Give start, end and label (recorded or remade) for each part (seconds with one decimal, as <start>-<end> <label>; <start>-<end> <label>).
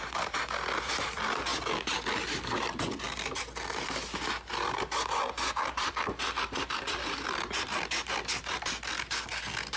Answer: 0.0-1.5 remade; 1.5-5.6 recorded; 5.6-9.3 remade; 9.3-9.8 recorded